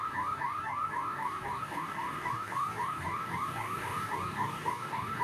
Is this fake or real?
fake